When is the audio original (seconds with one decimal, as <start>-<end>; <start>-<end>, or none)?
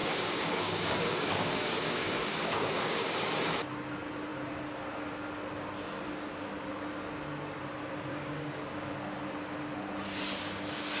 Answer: 3.4-8.1; 8.9-11.0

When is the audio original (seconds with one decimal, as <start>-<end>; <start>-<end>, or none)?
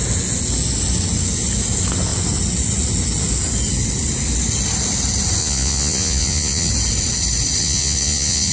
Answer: 0.0-5.4; 6.7-7.6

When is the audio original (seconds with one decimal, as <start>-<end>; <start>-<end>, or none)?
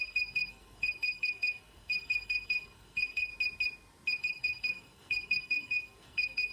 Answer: 3.3-4.2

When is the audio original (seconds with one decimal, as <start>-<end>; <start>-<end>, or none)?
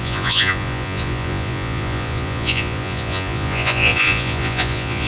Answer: none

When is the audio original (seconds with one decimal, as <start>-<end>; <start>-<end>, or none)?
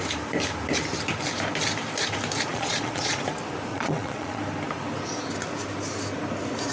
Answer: 0.0-2.5; 3.1-3.7; 4.4-6.7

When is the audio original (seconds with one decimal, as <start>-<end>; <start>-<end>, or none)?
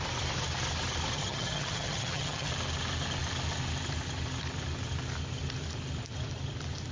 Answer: 0.0-1.2; 2.5-6.9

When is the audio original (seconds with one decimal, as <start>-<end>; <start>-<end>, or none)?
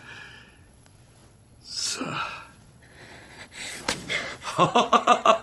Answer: none